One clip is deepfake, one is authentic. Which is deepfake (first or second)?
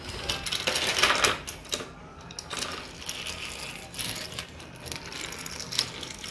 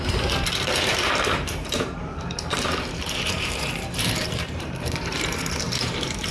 second